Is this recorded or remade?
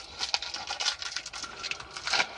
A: recorded